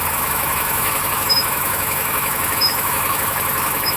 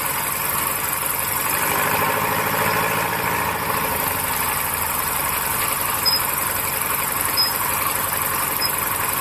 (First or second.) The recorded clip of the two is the second